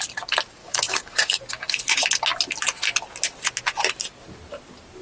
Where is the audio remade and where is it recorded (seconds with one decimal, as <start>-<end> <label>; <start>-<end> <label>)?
0.0-0.6 recorded; 0.6-1.4 remade; 1.4-5.0 recorded